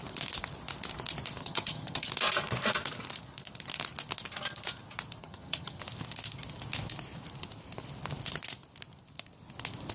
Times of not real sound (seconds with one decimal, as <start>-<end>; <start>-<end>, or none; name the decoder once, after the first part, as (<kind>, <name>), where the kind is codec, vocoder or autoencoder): 1.4-2.1 (vocoder, HiFi-GAN); 5.2-5.8